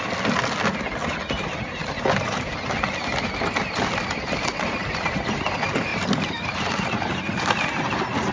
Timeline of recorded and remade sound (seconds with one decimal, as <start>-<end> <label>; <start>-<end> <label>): 0.0-4.8 recorded; 4.8-5.4 remade; 5.4-5.9 recorded; 5.9-7.2 remade; 7.2-8.3 recorded